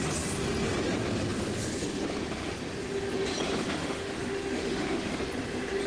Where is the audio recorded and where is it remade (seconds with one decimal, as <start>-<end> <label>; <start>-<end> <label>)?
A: 0.0-3.8 recorded; 3.8-5.1 remade; 5.1-5.9 recorded